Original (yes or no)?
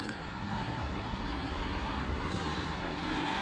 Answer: no